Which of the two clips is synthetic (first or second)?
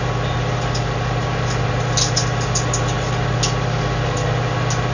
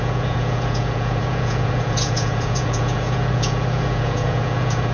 second